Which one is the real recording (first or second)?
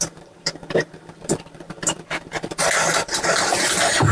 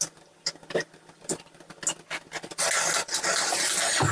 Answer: second